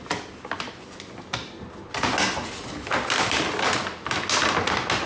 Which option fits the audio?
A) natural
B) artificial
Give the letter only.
A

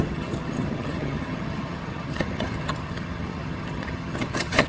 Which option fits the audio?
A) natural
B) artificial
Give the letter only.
B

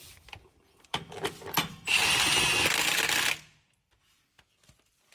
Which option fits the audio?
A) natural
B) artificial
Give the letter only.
B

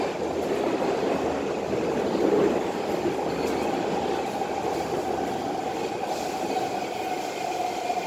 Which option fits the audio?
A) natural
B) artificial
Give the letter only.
A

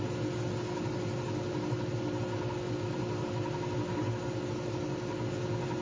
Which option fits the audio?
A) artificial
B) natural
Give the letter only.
B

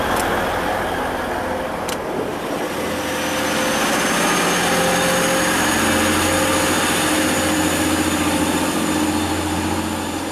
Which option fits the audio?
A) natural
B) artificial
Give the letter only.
A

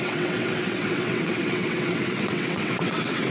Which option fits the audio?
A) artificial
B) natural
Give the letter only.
A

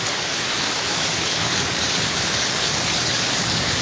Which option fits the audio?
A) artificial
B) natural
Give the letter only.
A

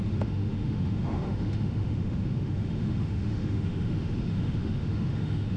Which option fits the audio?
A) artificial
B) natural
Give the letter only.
A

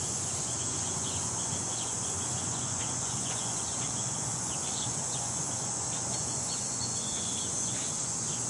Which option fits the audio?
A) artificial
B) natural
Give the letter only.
A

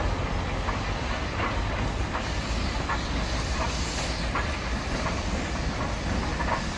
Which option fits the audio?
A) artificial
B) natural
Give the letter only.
B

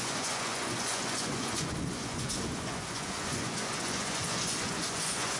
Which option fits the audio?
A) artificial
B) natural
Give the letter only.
A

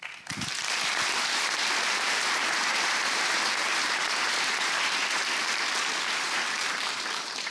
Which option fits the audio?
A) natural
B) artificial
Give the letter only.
B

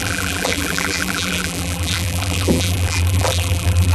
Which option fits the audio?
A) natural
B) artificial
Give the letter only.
B